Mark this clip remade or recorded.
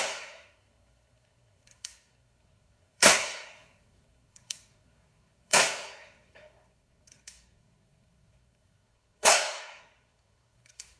remade